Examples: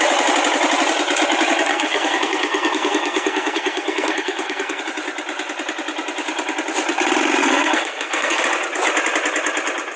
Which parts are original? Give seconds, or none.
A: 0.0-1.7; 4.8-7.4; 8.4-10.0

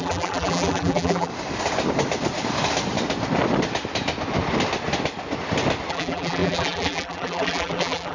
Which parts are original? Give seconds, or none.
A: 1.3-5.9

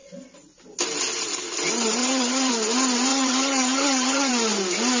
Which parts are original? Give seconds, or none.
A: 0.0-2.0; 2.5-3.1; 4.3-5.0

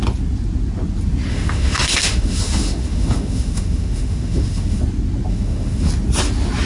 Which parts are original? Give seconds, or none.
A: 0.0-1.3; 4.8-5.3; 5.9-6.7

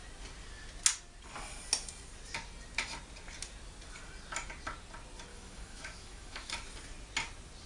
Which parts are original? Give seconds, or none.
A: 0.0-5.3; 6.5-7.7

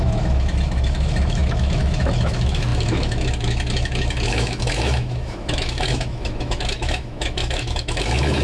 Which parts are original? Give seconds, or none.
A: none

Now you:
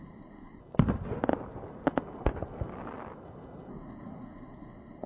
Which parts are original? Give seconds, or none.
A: 0.6-3.7